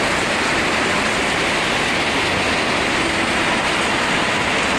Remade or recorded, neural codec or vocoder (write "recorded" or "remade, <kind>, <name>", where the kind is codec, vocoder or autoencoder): recorded